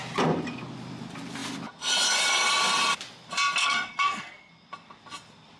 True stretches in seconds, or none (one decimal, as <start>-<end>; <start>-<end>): 0.0-3.6; 4.5-5.6